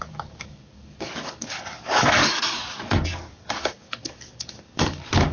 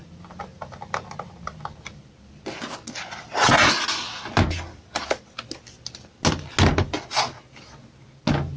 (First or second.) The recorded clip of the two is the second